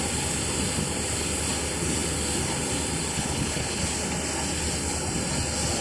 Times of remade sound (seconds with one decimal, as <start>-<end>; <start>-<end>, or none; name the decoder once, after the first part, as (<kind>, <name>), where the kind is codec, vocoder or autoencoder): 3.1-3.9 (codec, HILCodec)